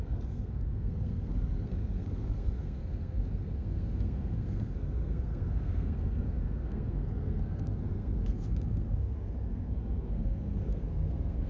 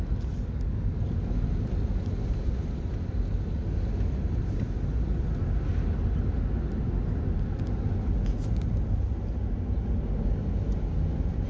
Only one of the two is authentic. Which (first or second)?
second